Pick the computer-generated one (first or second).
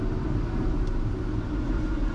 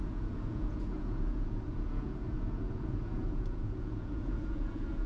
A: second